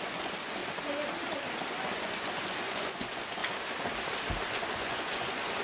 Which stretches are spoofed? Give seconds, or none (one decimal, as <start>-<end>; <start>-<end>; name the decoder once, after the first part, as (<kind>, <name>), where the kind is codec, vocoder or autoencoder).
0.0-0.6 (vocoder, Vocos); 1.8-3.4; 4.5-5.6